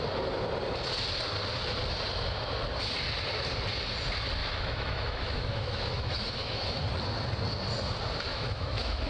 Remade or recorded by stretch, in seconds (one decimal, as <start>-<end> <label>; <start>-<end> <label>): 0.0-4.4 recorded; 4.4-6.8 remade; 6.8-8.3 recorded; 8.3-9.1 remade